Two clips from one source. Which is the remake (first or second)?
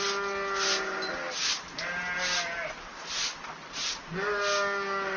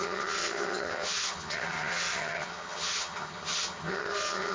second